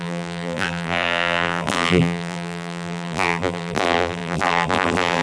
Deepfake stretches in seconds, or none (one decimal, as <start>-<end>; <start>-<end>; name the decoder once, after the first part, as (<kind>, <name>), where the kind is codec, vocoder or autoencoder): 0.0-5.2 (vocoder, BigVGAN v2)